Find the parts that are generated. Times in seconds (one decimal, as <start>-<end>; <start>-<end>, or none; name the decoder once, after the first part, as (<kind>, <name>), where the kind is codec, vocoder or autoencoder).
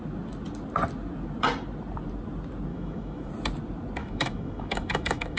2.7-3.3 (autoencoder, DAC-VAE); 4.0-5.4